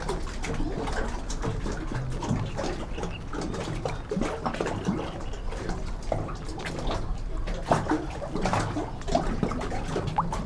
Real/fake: real